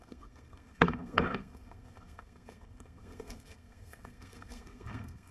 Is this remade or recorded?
remade